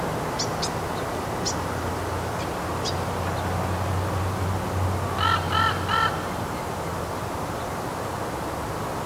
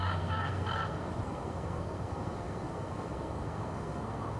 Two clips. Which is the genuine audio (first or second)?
first